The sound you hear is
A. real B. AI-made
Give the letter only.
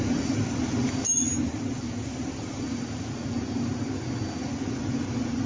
A